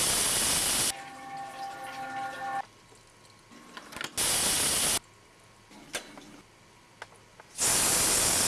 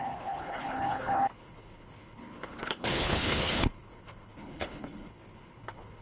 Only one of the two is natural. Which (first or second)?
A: first